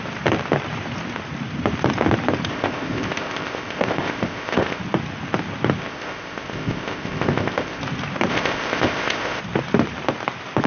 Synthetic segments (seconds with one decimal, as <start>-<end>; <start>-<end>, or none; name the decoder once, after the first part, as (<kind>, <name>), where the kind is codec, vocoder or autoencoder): 2.5-4.8 (codec, ZipCodec); 5.8-7.8; 8.3-9.4